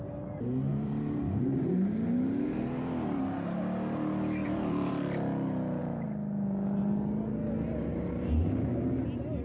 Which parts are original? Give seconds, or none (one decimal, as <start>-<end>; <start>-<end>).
0.0-0.7; 1.9-4.4; 5.0-9.4